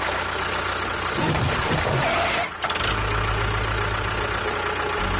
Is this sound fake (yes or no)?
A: no